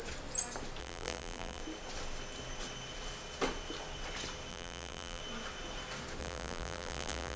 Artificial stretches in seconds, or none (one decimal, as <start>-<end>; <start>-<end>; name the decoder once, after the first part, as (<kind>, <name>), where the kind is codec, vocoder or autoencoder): 0.8-1.6 (vocoder, BigVGAN v2); 4.5-5.2; 6.2-7.4